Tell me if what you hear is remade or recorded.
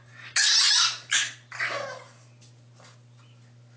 recorded